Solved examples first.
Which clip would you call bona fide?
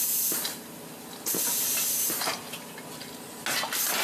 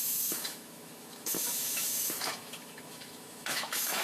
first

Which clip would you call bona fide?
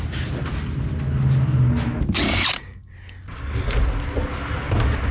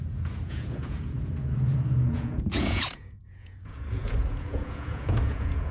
first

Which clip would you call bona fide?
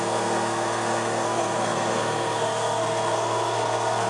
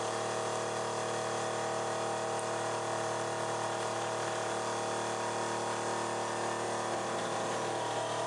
second